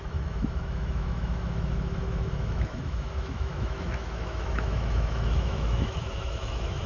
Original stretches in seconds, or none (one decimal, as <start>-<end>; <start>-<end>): none

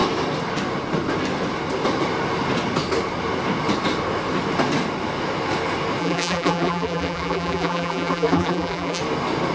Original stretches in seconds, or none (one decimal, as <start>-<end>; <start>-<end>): 0.0-6.0; 9.0-9.5

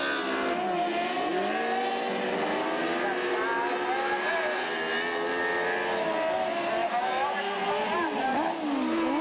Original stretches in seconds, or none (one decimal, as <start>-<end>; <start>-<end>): 0.0-9.2

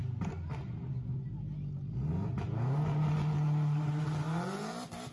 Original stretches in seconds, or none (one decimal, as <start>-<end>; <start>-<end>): 0.0-5.1

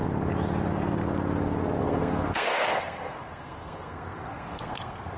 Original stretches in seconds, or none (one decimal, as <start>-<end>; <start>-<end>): 0.0-1.8

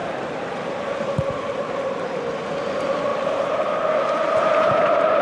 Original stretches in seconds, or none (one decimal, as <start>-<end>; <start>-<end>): 0.0-3.1